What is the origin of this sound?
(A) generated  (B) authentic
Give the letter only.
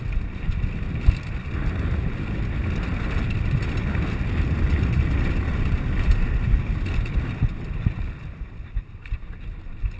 B